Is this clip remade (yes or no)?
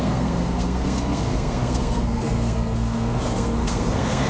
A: yes